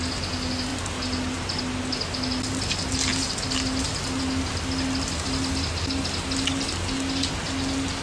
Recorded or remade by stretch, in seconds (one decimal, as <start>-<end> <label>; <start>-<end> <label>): 0.0-8.0 recorded